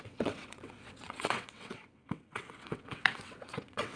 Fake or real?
fake